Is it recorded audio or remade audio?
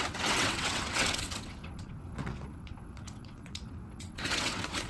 remade